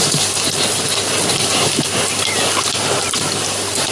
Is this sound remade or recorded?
recorded